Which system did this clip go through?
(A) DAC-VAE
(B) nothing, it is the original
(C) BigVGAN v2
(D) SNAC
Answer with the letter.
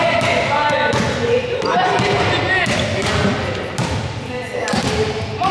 B